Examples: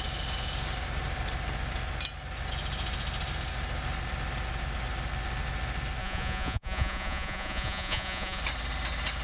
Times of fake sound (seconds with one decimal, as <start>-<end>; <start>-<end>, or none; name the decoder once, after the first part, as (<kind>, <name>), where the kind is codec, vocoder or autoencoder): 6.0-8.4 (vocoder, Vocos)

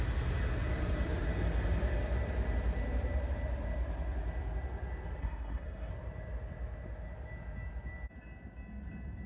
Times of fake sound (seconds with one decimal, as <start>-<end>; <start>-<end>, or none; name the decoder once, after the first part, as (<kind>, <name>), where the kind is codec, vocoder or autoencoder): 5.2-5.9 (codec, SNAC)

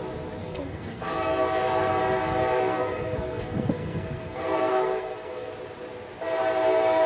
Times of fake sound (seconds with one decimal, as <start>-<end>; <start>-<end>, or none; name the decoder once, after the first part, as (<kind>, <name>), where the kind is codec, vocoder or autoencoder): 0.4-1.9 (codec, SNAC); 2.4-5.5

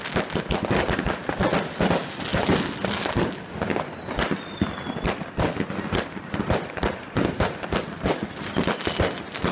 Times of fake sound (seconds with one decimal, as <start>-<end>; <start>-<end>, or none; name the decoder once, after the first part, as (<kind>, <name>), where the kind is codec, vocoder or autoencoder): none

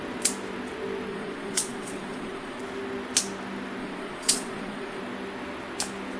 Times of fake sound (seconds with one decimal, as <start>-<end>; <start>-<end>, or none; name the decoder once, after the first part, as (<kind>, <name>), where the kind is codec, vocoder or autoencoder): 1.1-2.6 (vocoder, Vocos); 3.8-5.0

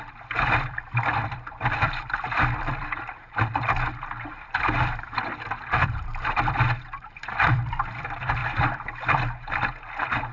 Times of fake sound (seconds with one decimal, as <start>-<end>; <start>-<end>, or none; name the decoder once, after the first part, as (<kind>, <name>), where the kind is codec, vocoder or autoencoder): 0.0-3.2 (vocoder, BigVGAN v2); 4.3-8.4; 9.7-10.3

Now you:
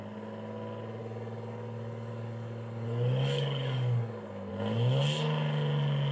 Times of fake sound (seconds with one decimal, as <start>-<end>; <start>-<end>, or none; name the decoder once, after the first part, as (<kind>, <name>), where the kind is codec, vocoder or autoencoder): 1.0-4.5 (codec, DAC)

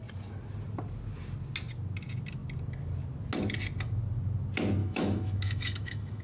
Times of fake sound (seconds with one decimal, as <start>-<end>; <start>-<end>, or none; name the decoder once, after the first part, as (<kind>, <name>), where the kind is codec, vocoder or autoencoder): 4.8-6.2 (autoencoder, DAC-VAE)